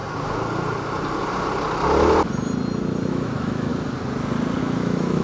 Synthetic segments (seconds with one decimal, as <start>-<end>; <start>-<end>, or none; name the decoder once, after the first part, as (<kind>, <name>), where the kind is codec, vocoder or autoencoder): 3.1-3.7 (autoencoder, DAC-VAE); 4.6-5.2